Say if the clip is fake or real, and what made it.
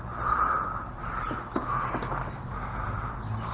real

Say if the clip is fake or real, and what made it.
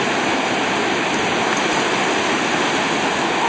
real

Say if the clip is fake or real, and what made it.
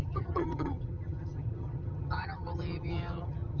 fake, vocoder, HiFi-GAN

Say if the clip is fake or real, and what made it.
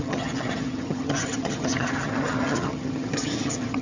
fake, vocoder, HiFi-GAN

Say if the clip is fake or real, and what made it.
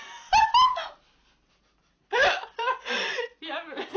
real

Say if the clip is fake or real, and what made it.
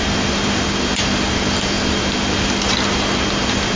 real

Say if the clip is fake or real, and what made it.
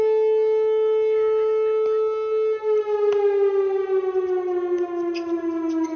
real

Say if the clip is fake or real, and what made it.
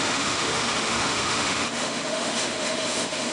fake, autoencoder, DAC-VAE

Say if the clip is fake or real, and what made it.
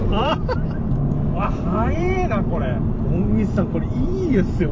fake, vocoder, BigVGAN v2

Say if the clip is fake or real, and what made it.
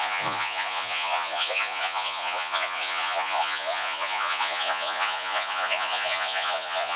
fake, vocoder, Vocos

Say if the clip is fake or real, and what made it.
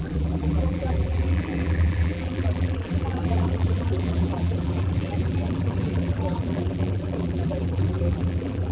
fake, vocoder, BigVGAN v2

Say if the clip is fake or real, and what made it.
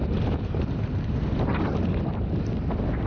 real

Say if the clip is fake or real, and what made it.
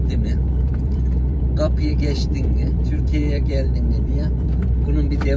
fake, vocoder, BigVGAN v2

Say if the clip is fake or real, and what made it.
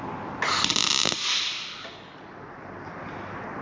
real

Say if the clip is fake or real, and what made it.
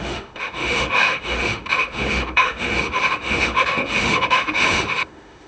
fake, autoencoder, DAC-VAE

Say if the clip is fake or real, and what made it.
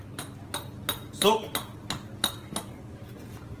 real